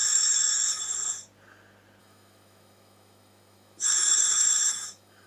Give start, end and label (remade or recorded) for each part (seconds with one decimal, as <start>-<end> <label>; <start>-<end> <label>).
0.0-0.8 remade; 0.8-2.0 recorded; 2.0-5.3 remade